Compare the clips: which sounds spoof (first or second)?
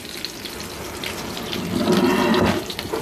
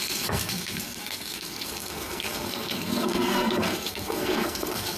second